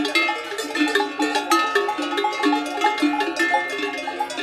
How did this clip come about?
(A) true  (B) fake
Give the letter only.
A